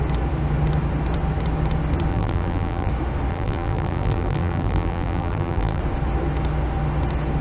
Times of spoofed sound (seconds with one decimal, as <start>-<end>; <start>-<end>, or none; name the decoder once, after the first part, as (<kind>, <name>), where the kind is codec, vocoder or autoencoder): 2.1-2.9 (vocoder, BigVGAN v2); 3.3-5.8